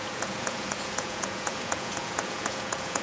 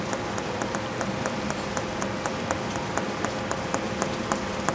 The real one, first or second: second